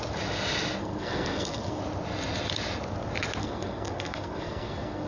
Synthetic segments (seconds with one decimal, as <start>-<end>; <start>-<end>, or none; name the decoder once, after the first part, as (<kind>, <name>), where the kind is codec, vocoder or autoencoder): 0.8-1.8 (codec, SNAC); 3.4-5.1